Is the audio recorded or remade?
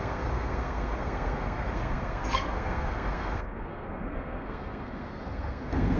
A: remade